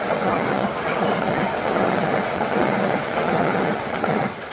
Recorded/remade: remade